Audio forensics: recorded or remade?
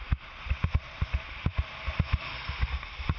recorded